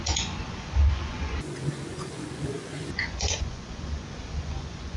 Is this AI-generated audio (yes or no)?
yes